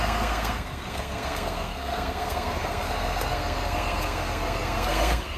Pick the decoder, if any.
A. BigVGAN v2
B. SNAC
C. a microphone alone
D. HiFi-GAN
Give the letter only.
B